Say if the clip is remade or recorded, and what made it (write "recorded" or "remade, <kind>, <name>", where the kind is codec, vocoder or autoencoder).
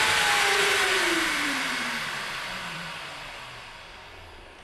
remade, vocoder, BigVGAN v2